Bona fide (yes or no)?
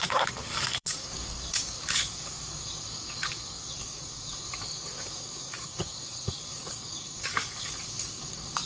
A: no